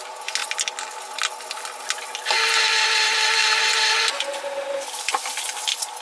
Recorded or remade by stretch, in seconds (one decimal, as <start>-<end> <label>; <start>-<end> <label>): 0.0-6.0 recorded